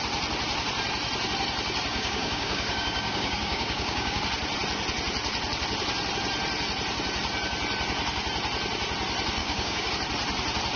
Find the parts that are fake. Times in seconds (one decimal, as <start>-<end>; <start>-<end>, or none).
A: 1.9-4.2; 9.4-9.9